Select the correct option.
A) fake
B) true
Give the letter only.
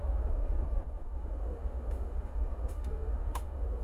A